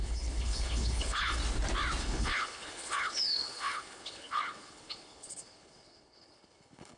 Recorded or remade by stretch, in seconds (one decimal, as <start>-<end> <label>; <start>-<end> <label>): 0.0-1.4 remade; 1.4-2.0 recorded; 2.0-7.0 remade